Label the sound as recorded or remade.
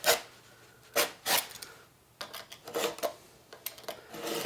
recorded